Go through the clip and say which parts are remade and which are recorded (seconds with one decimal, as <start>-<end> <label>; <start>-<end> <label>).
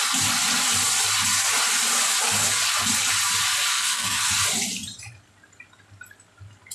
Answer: 0.0-3.7 recorded; 3.7-4.3 remade; 4.3-6.7 recorded